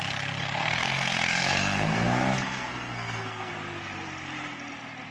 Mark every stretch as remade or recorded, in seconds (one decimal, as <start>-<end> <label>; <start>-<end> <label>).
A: 0.0-0.4 recorded; 0.4-3.5 remade; 3.5-5.1 recorded